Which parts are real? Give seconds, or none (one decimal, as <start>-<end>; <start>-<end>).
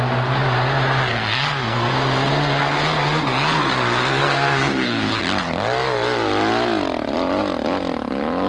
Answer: 0.0-1.1; 1.9-4.2; 5.2-8.5